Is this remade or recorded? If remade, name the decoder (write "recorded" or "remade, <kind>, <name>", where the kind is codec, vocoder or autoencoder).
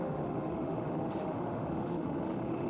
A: remade, autoencoder, DAC-VAE